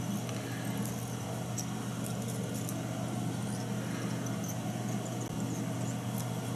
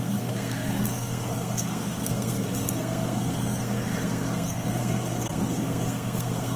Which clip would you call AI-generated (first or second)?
second